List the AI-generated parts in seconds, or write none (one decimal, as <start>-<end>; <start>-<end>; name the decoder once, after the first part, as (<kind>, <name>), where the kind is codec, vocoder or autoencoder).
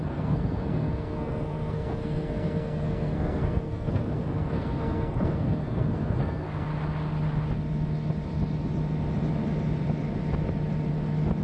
0.0-6.7 (codec, SNAC)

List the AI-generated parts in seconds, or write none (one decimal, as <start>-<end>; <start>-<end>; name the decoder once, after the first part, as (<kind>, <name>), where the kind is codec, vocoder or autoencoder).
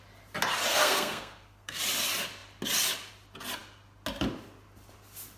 0.7-1.8 (codec, SNAC)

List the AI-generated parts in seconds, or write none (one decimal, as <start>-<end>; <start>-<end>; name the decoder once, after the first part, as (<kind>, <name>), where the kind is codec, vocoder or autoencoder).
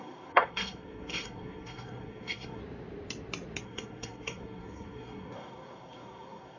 0.0-2.6 (codec, SNAC); 3.6-6.6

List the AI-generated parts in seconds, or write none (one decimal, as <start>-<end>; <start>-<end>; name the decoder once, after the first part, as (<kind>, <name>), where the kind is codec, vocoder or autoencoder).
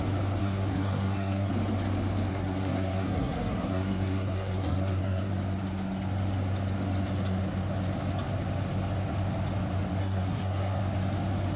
0.4-1.5 (codec, SNAC); 2.3-5.3; 10.0-10.8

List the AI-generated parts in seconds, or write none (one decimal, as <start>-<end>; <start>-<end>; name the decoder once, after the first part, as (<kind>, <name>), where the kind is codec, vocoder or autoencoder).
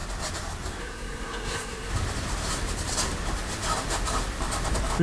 0.8-1.9 (codec, SNAC)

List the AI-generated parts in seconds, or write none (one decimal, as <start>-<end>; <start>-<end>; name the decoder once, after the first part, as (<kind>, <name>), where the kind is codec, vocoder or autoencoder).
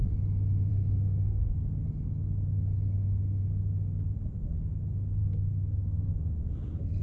0.7-1.6 (codec, SNAC); 5.2-6.1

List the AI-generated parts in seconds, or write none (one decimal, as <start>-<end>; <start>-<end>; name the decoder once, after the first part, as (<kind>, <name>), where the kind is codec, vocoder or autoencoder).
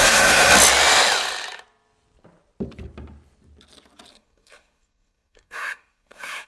0.0-0.5 (codec, SNAC); 4.1-6.5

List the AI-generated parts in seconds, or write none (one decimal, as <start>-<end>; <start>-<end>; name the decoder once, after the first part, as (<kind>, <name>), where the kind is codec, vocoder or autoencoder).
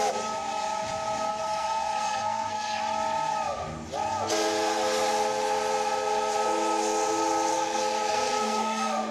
1.3-2.8 (codec, SNAC); 7.5-9.1